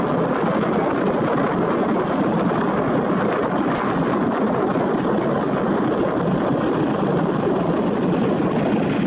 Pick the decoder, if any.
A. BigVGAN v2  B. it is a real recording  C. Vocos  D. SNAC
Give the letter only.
B